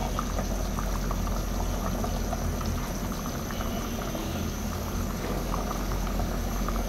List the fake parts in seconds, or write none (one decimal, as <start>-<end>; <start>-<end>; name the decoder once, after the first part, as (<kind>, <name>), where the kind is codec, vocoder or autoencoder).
4.2-6.9 (codec, DAC)